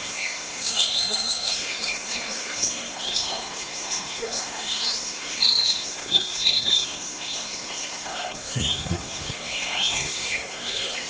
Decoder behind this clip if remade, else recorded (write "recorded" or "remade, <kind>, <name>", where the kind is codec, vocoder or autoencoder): remade, codec, SNAC